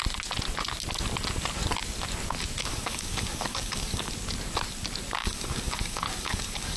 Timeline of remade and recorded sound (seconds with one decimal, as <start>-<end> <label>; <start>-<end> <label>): 0.0-2.7 recorded; 2.7-4.1 remade; 4.1-5.2 recorded; 5.2-6.8 remade